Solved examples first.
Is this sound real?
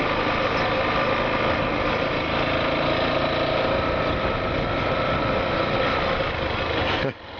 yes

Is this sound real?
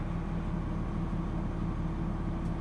yes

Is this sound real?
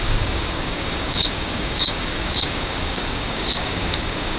no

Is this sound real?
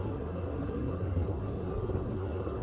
no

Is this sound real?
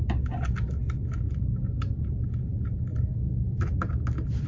yes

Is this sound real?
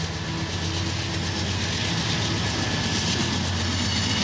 yes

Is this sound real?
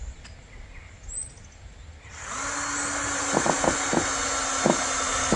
yes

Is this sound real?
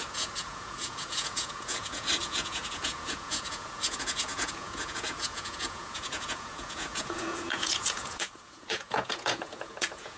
no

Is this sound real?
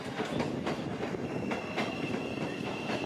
yes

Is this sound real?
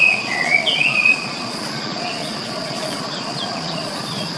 no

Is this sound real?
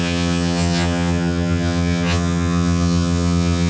no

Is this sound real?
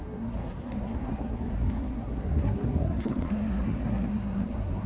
no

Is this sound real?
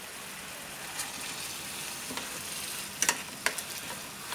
yes